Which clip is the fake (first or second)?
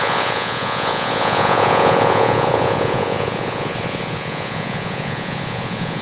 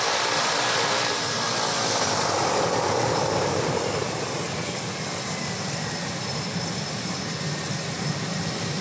first